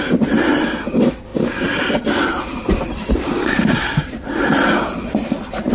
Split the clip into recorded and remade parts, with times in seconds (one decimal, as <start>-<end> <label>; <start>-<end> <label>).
0.0-1.3 recorded; 1.3-2.1 remade; 2.1-2.7 recorded; 2.7-3.3 remade; 3.3-3.9 recorded; 3.9-5.3 remade; 5.3-5.7 recorded